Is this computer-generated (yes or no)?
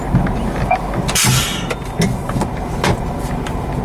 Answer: no